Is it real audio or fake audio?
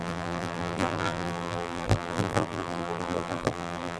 fake